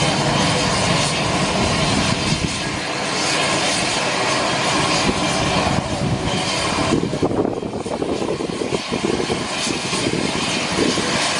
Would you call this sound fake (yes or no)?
no